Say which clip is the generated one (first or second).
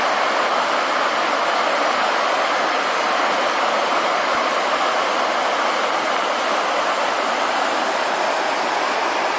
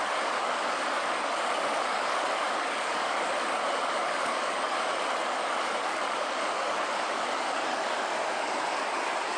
second